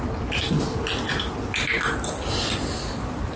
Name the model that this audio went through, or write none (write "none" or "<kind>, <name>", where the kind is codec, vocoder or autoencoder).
none